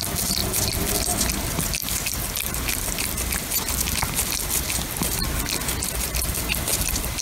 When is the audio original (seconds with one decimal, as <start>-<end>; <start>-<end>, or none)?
0.0-7.2